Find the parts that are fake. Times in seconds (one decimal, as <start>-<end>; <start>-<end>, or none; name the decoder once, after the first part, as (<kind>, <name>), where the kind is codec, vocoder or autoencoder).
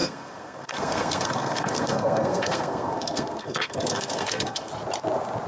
0.0-4.7 (codec, SNAC)